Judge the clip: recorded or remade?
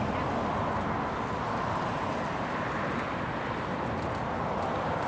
recorded